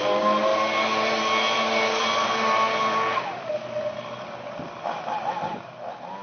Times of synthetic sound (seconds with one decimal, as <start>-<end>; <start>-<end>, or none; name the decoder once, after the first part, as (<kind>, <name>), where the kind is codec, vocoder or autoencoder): none